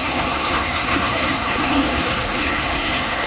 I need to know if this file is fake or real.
fake